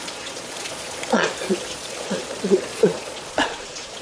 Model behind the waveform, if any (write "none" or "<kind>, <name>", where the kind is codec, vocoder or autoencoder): vocoder, Vocos